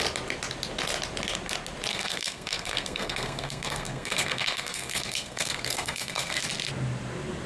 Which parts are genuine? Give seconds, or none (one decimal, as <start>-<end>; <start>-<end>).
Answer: 0.0-1.9; 6.4-7.5